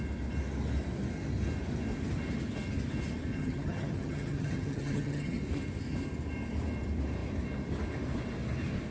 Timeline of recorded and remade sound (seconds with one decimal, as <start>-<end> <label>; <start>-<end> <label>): 0.0-3.3 recorded; 3.3-5.4 remade; 5.4-8.9 recorded